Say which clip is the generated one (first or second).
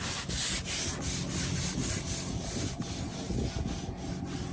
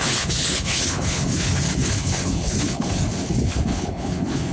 second